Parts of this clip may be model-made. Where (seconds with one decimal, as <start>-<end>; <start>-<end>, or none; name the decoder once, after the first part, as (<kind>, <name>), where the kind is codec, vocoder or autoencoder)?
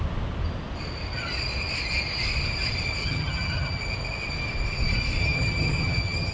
3.0-3.8 (vocoder, HiFi-GAN); 5.2-6.3